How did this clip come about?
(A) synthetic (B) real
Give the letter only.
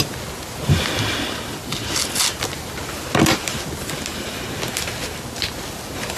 B